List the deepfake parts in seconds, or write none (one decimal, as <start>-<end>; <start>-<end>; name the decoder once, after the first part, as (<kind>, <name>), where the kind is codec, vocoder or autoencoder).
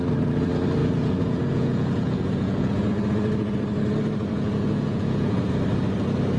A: 0.8-2.9 (vocoder, Vocos); 4.3-5.5